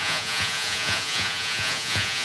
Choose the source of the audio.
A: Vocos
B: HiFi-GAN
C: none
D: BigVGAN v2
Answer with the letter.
A